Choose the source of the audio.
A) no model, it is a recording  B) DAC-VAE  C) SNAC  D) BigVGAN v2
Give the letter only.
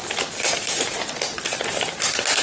A